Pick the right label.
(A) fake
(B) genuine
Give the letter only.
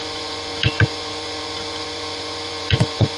A